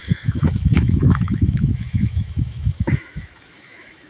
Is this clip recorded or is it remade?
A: remade